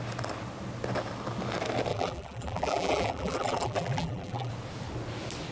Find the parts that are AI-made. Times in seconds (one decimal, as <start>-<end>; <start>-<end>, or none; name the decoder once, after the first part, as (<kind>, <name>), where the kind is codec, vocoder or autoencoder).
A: 1.9-4.5 (vocoder, BigVGAN v2)

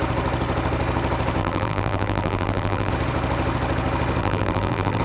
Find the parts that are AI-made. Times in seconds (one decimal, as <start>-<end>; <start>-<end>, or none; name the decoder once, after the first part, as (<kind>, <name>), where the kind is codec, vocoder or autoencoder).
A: 1.4-2.9 (vocoder, BigVGAN v2); 4.2-5.0

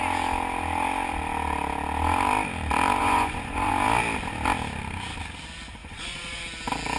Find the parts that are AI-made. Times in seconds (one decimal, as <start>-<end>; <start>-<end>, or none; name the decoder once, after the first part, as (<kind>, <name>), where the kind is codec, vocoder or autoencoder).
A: 3.0-3.7 (vocoder, Vocos); 5.8-6.4